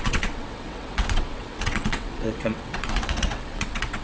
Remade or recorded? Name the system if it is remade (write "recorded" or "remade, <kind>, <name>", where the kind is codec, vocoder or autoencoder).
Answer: remade, vocoder, WaveNeXt